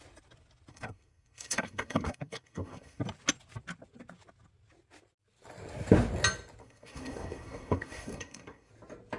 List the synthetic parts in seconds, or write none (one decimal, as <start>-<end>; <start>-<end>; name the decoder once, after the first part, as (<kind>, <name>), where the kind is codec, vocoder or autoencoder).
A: 0.7-3.0 (codec, SNAC); 6.6-8.7